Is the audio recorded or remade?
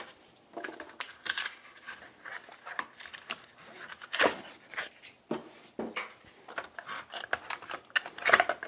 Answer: recorded